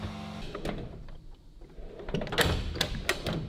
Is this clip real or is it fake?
real